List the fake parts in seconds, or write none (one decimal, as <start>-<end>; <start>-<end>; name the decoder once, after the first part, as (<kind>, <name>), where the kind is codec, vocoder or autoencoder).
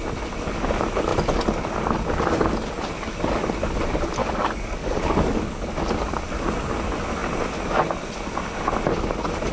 4.2-5.9 (codec, DAC)